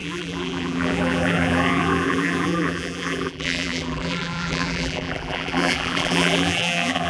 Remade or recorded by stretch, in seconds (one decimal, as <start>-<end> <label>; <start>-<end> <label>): 0.0-7.1 remade